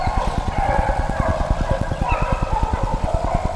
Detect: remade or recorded remade